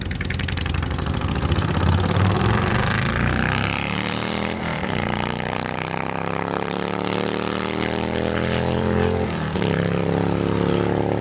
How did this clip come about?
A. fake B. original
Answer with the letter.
A